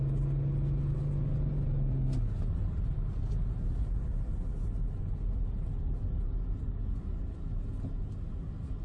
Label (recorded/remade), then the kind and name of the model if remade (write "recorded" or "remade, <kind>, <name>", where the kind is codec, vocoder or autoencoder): recorded